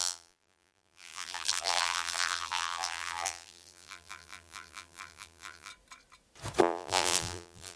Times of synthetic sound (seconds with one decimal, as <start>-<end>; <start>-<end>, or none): 0.0-5.7; 6.6-7.8